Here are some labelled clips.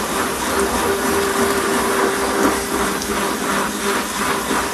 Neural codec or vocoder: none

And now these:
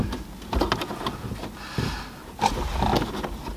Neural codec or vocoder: none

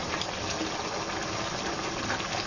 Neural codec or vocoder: none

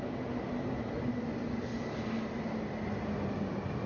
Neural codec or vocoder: none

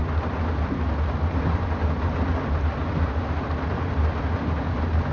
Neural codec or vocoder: none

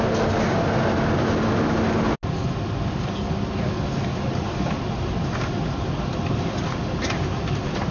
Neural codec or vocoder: none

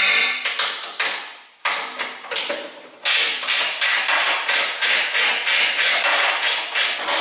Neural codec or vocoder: none